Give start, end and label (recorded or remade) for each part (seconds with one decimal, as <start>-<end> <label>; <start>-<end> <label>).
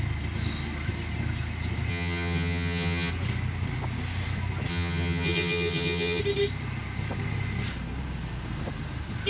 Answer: 0.0-1.9 recorded; 1.9-3.1 remade; 3.1-4.7 recorded; 4.7-6.2 remade; 6.2-9.3 recorded